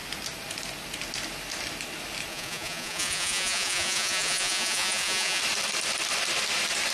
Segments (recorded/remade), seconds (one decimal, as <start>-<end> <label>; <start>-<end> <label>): 0.0-2.3 recorded; 2.3-5.4 remade; 5.4-6.9 recorded